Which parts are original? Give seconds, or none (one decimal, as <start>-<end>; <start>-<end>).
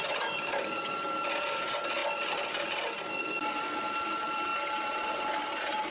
2.0-3.1; 4.5-5.9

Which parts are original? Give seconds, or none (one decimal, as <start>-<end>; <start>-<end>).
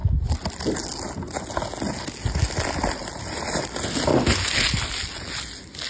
0.0-5.9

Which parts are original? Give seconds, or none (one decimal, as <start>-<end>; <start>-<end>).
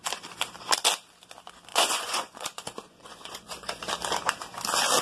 0.0-1.7; 3.8-5.0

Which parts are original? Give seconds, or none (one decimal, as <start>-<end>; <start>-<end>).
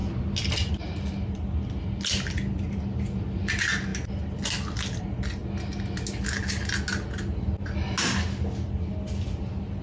0.0-9.8